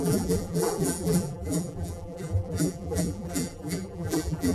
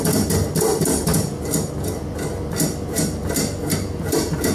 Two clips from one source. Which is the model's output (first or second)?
first